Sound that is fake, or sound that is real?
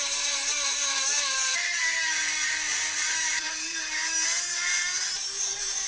fake